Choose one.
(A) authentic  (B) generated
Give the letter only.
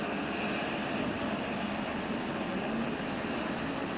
A